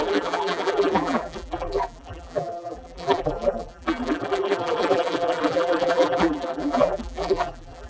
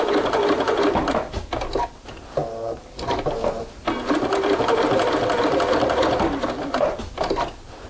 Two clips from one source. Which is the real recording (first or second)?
second